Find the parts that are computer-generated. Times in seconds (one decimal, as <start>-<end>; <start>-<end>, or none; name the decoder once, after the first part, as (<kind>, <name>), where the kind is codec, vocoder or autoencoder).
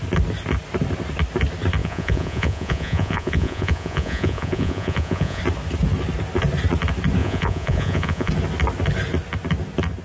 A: 1.8-5.4 (vocoder, Vocos); 7.2-8.3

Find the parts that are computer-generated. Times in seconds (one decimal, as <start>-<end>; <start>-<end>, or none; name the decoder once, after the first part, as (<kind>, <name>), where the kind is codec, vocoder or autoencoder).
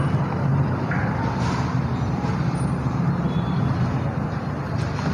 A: 0.5-3.6 (vocoder, BigVGAN v2)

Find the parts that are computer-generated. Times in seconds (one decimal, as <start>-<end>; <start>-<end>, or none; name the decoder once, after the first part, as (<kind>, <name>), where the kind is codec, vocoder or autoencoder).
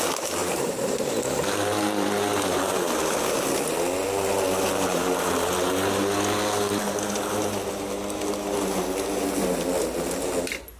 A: 0.4-2.6 (vocoder, BigVGAN v2); 4.7-5.7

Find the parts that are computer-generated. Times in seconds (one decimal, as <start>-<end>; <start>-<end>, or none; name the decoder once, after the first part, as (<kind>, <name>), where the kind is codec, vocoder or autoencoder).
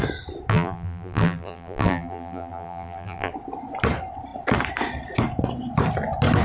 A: 0.5-3.3 (vocoder, BigVGAN v2)